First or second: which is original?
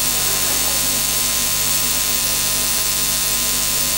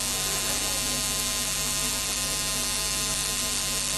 second